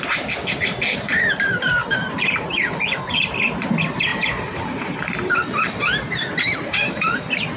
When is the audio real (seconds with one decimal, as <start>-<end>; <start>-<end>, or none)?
0.0-1.8; 3.2-4.1; 5.4-6.5